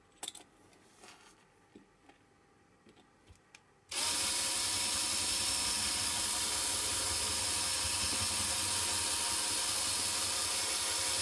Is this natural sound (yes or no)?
yes